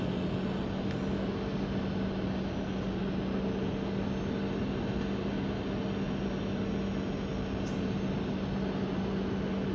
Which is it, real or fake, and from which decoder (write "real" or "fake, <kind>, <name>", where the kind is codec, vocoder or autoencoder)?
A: real